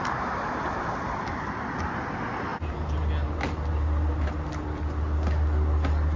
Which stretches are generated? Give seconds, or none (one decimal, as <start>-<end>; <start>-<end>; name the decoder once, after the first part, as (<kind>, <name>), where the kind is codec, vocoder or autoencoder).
none

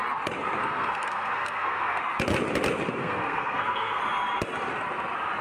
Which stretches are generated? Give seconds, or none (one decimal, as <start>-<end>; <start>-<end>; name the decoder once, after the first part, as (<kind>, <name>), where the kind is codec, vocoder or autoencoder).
0.6-2.0 (codec, SNAC); 3.0-4.0

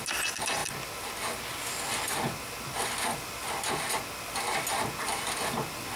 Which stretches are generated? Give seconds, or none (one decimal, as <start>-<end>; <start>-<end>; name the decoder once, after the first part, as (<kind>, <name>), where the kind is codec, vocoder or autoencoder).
none

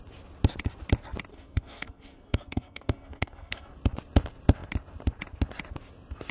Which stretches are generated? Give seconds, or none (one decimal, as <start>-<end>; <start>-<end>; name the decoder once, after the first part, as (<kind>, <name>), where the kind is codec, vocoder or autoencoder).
1.3-3.7 (codec, SNAC)